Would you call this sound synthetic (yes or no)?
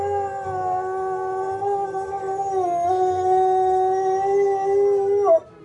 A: no